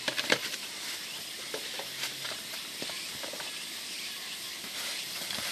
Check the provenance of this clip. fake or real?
real